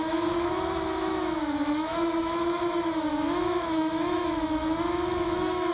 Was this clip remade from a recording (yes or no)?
yes